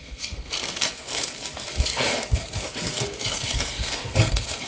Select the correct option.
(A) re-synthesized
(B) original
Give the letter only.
A